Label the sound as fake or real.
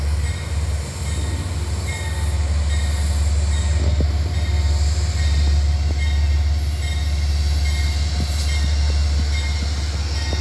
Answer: real